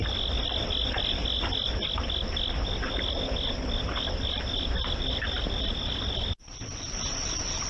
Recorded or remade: recorded